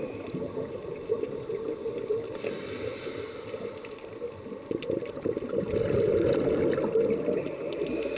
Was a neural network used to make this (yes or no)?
no